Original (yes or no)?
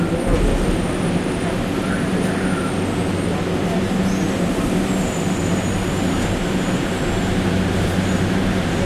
yes